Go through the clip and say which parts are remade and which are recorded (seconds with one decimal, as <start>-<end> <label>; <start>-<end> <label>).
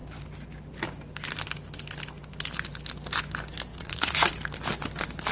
0.0-3.7 recorded; 3.7-4.3 remade; 4.3-5.3 recorded